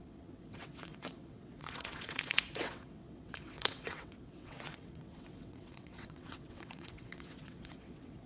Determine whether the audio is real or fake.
fake